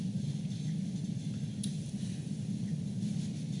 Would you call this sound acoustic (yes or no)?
yes